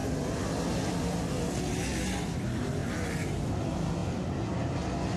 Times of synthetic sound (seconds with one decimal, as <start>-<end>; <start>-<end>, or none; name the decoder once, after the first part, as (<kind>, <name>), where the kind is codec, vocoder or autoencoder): none